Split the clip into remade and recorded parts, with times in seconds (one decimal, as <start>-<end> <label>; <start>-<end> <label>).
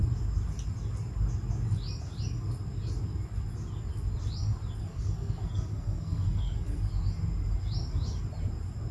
0.0-4.8 recorded; 4.8-6.9 remade; 6.9-8.9 recorded